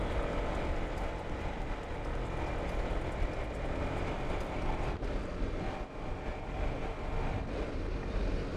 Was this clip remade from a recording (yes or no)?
no